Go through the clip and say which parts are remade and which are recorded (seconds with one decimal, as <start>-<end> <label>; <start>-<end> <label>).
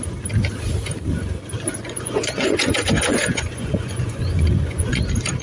0.0-1.8 recorded; 1.8-5.0 remade; 5.0-5.4 recorded